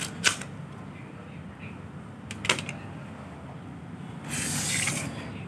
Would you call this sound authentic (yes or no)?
yes